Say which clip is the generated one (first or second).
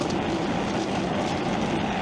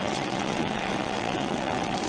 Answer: second